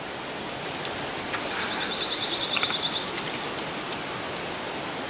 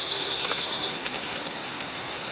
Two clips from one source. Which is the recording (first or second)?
first